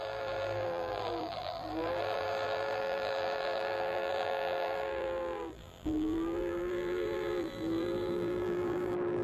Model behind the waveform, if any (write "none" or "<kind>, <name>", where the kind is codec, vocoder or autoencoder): vocoder, BigVGAN v2